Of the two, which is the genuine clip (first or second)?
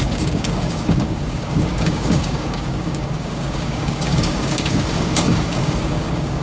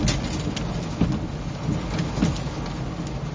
second